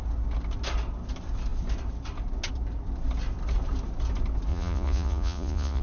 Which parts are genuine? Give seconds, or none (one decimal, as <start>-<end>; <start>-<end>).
0.0-4.5